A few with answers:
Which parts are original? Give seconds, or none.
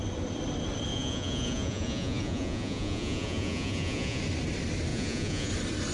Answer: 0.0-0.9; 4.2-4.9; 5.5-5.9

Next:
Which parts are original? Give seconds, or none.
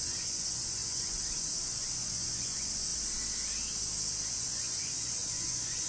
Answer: 2.9-4.3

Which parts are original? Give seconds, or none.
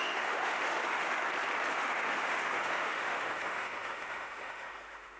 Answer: 1.2-1.7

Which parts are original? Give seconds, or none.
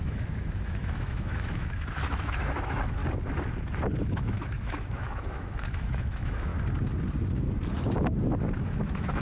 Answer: 3.0-4.0; 6.5-8.6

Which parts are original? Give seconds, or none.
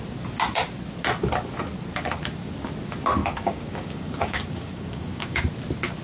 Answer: 0.0-3.2; 5.4-6.0